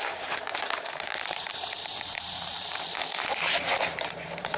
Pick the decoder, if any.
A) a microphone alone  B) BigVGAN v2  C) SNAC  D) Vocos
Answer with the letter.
B